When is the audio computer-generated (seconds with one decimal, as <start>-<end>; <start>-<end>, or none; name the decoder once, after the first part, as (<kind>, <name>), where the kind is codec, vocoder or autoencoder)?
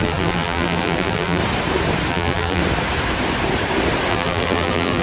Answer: 0.0-1.4 (vocoder, BigVGAN v2); 2.1-2.6; 4.1-5.0